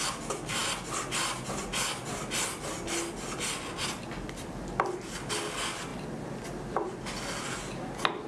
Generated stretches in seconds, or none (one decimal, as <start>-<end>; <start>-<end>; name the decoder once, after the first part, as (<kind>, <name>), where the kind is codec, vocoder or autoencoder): none